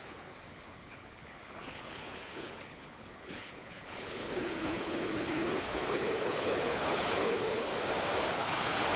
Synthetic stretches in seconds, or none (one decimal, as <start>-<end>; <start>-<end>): 0.0-7.7; 8.3-9.0